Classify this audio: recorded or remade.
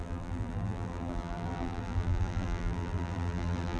remade